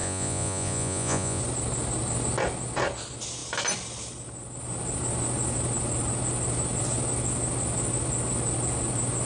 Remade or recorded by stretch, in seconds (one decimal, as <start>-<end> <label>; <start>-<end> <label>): 0.0-1.4 remade; 1.4-9.3 recorded